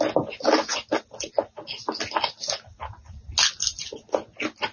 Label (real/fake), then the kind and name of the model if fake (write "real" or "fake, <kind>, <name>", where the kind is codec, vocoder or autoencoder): real